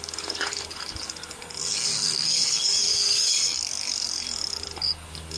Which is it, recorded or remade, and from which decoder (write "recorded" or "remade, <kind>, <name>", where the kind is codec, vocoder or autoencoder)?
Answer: remade, codec, DAC